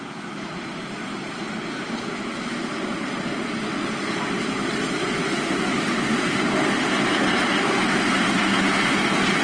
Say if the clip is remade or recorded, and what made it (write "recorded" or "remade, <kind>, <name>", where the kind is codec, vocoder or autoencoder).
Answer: recorded